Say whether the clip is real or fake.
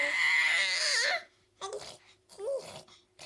fake